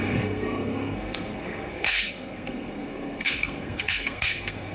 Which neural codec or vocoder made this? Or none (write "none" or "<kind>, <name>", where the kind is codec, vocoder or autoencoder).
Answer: codec, SNAC